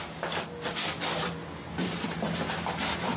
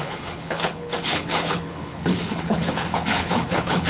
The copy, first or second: second